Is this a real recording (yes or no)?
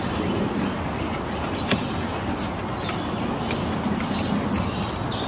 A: yes